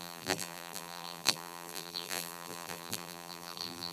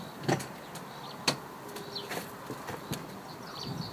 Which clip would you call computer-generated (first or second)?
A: first